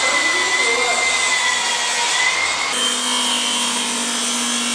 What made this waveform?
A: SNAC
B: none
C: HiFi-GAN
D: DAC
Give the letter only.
B